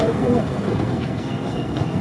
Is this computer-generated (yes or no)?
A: yes